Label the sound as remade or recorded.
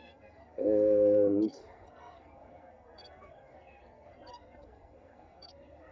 remade